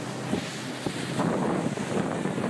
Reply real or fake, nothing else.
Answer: real